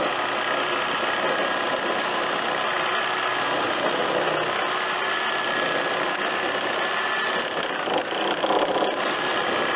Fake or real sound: real